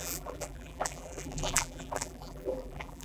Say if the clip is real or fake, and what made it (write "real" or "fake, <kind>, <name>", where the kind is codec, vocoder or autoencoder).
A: fake, vocoder, BigVGAN v2